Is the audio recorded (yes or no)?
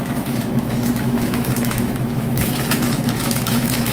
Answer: no